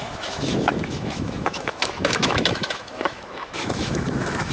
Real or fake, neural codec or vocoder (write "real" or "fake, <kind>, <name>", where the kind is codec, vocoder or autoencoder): fake, autoencoder, DAC-VAE